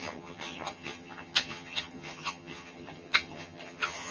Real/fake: fake